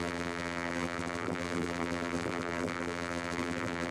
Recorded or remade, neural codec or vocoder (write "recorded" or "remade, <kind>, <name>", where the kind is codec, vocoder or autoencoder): remade, vocoder, BigVGAN v2